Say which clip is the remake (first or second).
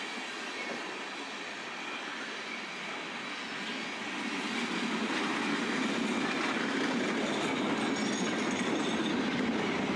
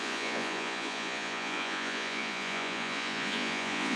second